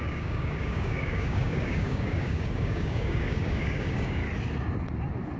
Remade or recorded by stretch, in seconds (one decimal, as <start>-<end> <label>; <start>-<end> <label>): 0.0-4.2 remade; 4.2-5.4 recorded